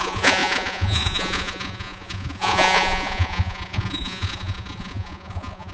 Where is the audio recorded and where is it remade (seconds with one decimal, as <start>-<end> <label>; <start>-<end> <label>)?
0.0-5.7 remade